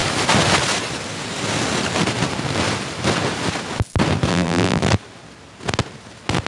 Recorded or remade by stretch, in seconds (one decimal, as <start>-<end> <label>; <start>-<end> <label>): 0.0-4.3 recorded; 4.3-4.8 remade; 4.8-6.5 recorded